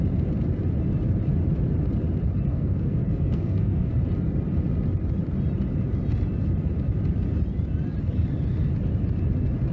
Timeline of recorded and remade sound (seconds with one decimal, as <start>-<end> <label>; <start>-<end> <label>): 0.0-2.5 recorded; 2.5-3.9 remade; 3.9-9.7 recorded